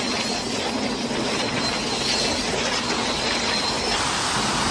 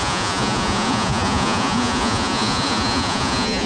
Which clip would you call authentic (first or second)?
first